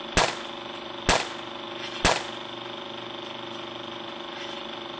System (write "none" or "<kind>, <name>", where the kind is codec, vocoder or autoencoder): none